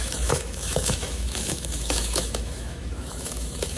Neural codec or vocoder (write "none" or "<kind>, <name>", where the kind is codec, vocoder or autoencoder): autoencoder, DAC-VAE